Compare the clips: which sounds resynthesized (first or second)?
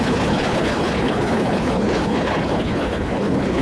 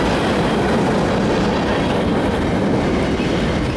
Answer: first